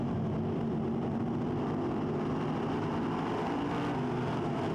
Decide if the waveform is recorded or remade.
recorded